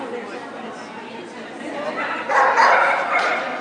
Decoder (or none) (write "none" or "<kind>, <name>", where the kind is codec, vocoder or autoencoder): none